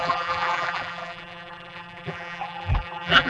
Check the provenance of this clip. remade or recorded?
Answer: remade